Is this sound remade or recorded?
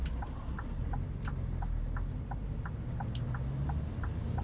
recorded